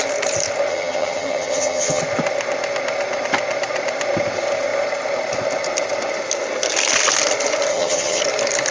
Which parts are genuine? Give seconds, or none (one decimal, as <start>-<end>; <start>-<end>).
0.0-0.7; 2.0-7.7; 8.2-8.7